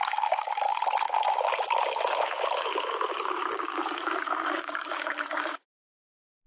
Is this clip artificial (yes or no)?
yes